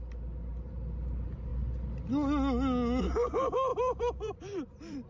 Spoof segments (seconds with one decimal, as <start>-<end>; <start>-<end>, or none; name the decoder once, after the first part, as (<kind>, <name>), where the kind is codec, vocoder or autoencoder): 3.7-5.1 (vocoder, BigVGAN v2)